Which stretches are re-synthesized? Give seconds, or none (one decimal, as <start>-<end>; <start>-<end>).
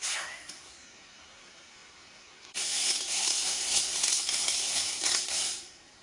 0.0-6.0